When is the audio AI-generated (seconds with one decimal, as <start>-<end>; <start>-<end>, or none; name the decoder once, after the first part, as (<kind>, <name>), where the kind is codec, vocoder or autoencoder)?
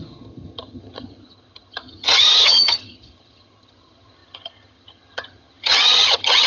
0.0-6.5 (vocoder, HiFi-GAN)